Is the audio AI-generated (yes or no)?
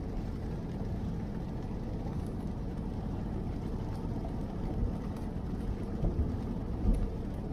yes